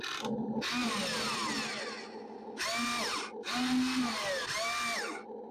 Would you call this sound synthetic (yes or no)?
no